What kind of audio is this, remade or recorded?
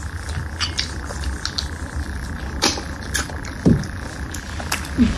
recorded